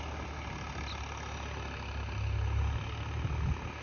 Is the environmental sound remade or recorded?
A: recorded